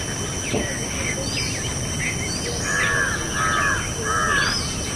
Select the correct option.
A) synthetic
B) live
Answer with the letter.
B